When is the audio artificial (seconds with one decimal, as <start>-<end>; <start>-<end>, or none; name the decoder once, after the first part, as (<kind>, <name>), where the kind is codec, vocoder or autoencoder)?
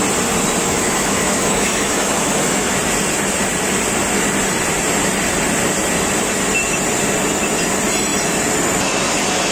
0.6-2.8 (autoencoder, DAC-VAE)